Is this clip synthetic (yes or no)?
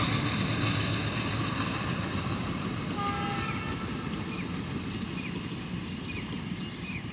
no